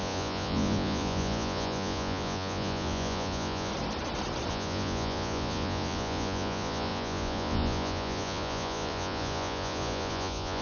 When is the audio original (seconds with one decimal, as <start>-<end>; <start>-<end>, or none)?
3.7-4.5